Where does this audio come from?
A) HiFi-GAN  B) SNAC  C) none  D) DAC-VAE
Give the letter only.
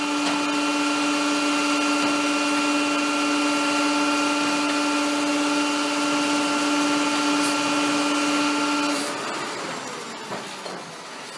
C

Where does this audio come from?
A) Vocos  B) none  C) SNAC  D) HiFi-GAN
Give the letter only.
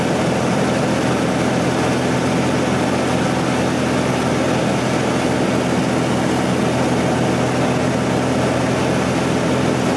B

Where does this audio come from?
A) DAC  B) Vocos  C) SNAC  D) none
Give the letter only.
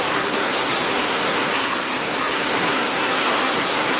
C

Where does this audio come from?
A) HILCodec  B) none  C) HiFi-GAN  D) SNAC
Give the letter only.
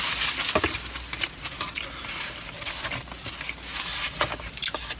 B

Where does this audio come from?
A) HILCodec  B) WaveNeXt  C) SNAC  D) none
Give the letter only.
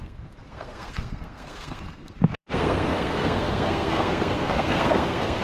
C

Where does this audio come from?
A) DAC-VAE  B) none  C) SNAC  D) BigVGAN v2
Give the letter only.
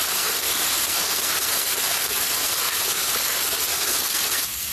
C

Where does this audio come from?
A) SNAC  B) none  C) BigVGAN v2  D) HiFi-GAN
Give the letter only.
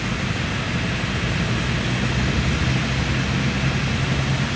B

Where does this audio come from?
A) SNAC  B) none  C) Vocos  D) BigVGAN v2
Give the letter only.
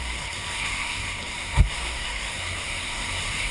A